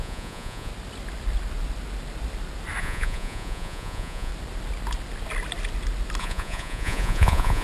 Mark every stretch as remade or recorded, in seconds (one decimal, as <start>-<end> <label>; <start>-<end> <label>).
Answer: 0.0-0.7 remade; 0.7-2.8 recorded; 2.8-4.3 remade; 4.3-6.2 recorded; 6.2-7.6 remade